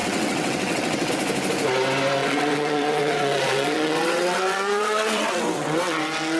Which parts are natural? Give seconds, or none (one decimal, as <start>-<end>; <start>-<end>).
1.1-2.2; 6.0-6.4